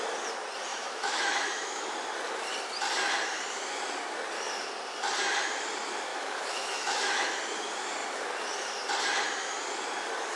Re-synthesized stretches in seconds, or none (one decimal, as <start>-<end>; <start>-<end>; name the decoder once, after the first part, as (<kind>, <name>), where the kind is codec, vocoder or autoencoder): 0.7-1.8 (autoencoder, DAC-VAE); 6.1-7.4